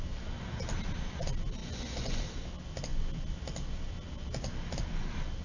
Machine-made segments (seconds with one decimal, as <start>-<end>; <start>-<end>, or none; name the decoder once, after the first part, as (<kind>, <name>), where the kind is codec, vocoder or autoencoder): 1.6-2.2 (vocoder, Vocos)